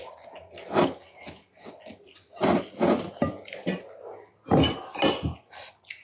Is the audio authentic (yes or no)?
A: yes